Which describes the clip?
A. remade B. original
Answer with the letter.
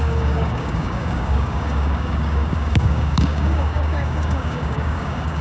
A